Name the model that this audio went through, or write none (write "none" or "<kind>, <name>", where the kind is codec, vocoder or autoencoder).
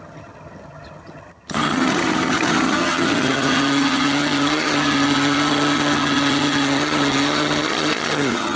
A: vocoder, HiFi-GAN